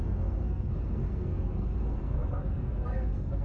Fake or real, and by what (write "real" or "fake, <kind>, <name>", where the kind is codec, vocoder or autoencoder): fake, codec, SNAC